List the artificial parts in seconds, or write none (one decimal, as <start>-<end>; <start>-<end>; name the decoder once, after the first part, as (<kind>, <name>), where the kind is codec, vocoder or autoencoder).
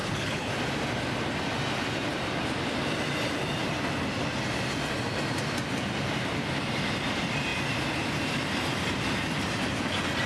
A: 0.0-0.5 (codec, HILCodec)